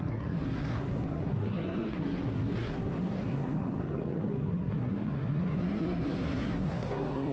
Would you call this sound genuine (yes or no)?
no